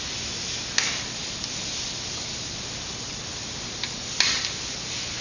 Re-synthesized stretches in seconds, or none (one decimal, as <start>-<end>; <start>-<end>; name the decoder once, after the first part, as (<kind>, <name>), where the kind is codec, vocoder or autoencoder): none